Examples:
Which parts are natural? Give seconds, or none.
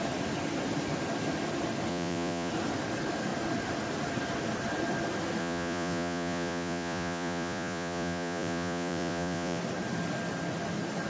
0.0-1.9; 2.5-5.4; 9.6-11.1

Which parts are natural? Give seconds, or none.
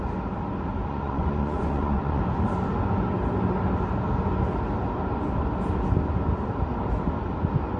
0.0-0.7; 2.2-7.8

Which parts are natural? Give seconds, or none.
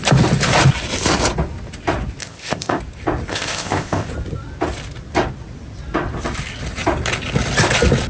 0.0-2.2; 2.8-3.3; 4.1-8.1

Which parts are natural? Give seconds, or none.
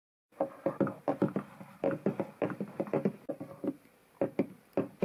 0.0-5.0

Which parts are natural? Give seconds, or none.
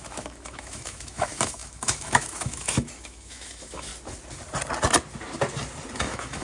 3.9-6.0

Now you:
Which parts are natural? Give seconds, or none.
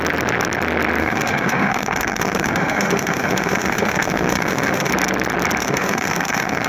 0.0-1.0; 4.9-5.6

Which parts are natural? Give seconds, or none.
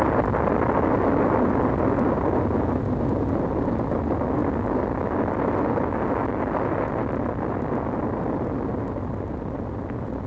0.0-10.3